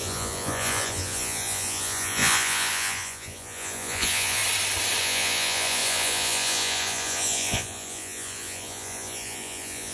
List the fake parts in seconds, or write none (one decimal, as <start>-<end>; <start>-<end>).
0.0-4.4; 5.0-9.9